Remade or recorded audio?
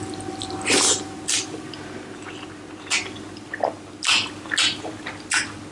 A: recorded